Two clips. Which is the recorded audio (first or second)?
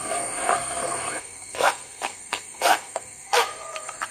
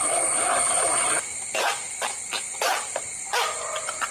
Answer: second